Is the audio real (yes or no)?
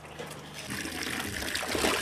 yes